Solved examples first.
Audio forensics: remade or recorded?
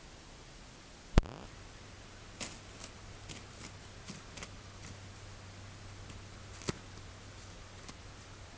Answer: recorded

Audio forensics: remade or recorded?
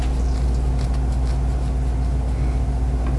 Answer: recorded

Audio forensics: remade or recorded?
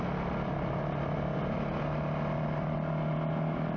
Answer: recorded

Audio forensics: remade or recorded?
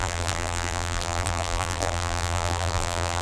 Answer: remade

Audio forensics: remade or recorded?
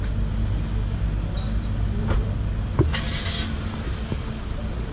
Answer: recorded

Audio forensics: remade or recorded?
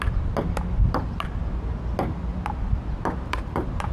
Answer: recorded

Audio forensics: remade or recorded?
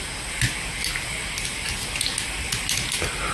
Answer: recorded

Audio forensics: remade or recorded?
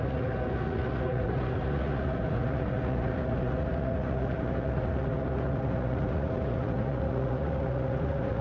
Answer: remade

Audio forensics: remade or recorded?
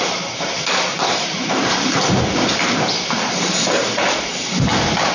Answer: recorded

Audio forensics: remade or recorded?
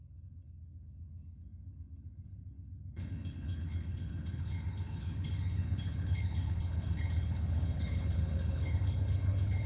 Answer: remade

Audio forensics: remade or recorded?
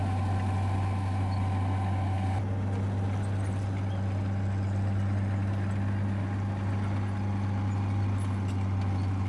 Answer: recorded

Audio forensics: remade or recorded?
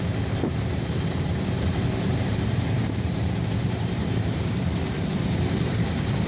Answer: remade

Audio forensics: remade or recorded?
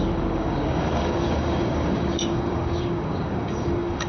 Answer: remade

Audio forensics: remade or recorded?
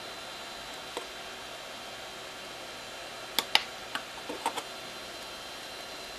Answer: recorded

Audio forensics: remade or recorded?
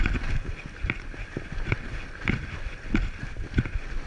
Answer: recorded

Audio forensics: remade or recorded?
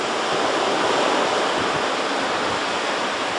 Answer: recorded